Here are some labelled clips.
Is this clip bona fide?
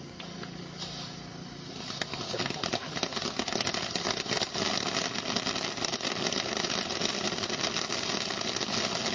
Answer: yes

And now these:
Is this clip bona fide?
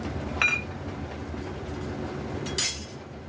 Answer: yes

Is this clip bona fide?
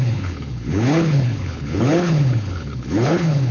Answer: no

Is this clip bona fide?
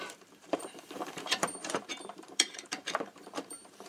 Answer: no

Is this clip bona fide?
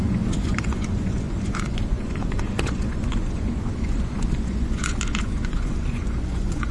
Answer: no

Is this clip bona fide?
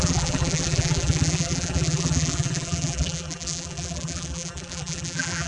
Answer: no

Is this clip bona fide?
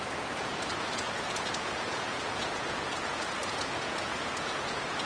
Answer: no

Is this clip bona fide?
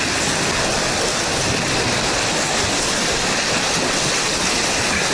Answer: yes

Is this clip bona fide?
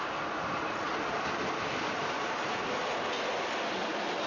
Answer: yes